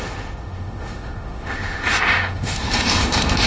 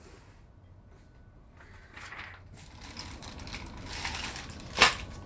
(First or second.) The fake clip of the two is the first